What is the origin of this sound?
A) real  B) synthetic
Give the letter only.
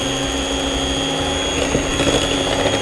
A